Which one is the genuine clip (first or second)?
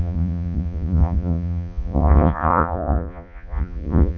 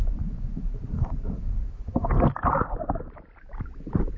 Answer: second